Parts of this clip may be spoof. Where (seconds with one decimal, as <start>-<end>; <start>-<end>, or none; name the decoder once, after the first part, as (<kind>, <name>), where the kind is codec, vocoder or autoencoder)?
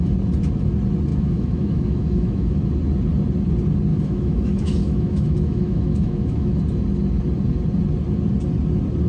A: 1.1-2.7 (autoencoder, DAC-VAE); 3.9-6.6